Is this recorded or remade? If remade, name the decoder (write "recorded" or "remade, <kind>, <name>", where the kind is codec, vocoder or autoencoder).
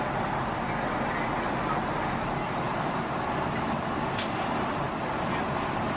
recorded